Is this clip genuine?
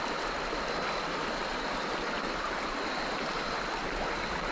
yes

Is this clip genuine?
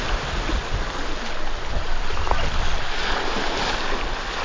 yes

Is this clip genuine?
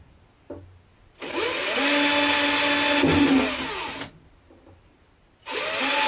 yes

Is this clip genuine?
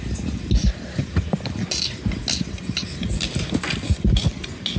yes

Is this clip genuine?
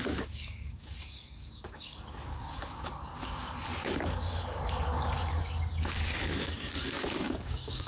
no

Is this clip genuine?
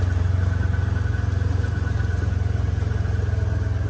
yes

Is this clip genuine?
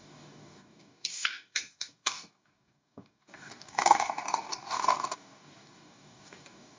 no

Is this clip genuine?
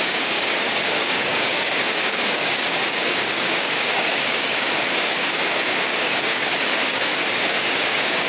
no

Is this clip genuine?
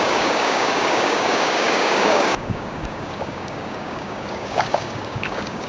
no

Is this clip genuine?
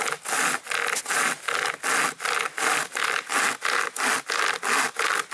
yes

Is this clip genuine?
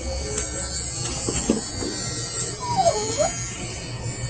yes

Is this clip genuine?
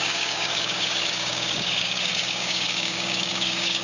no